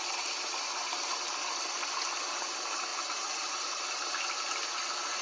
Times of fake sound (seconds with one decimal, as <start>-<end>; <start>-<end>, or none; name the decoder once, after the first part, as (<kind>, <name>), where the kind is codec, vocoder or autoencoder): none